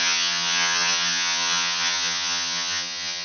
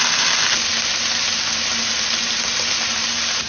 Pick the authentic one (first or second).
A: second